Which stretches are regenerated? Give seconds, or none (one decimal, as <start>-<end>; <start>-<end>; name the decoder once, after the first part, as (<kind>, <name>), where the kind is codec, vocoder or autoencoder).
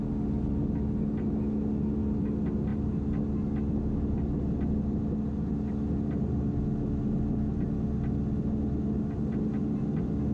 none